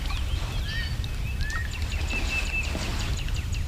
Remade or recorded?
recorded